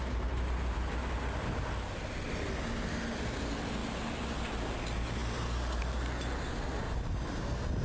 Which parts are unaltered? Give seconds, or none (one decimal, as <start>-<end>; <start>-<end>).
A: 0.0-7.8